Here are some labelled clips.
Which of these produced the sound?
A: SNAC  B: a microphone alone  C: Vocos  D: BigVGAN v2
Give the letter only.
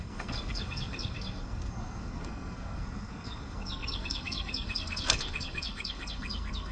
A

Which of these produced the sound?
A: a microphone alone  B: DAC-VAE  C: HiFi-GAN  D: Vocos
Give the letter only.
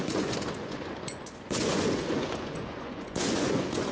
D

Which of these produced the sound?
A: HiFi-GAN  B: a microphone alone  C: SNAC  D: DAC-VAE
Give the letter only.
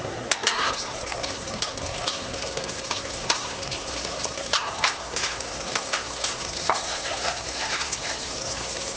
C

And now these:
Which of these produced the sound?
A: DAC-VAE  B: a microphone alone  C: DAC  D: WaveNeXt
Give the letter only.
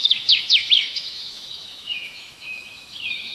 A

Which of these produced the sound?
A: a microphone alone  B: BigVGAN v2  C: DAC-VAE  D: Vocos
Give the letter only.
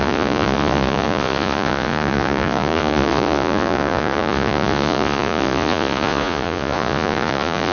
D